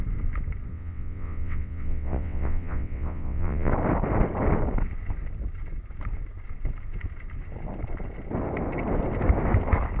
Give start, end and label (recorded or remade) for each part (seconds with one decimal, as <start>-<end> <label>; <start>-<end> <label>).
0.0-0.7 recorded; 0.7-3.7 remade; 3.7-10.0 recorded